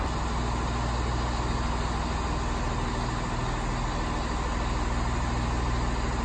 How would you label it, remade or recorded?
recorded